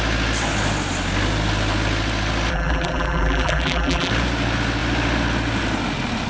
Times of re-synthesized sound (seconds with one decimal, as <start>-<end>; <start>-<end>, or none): 2.5-4.1